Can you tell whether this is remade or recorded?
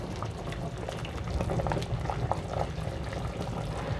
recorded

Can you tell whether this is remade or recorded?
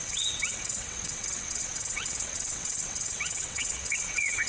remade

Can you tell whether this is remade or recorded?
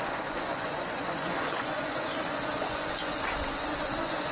remade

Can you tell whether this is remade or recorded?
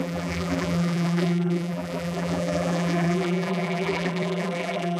remade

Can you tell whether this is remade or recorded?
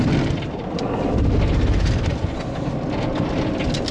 recorded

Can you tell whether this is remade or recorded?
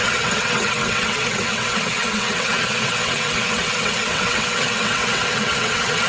remade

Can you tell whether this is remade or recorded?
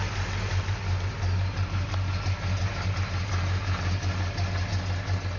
recorded